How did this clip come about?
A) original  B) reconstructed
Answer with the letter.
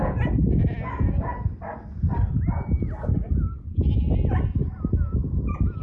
A